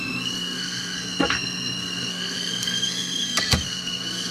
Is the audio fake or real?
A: fake